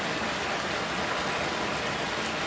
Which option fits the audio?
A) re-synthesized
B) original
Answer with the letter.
B